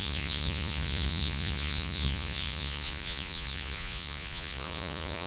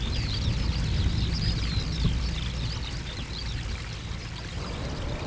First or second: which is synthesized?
first